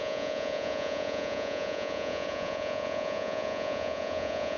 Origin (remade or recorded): remade